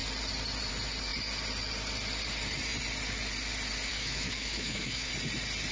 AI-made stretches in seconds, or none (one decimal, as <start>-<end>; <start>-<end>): 3.9-5.1